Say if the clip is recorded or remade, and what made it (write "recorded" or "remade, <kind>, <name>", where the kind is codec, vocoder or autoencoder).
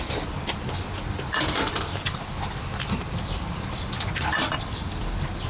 recorded